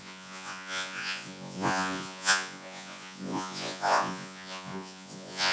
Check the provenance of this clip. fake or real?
fake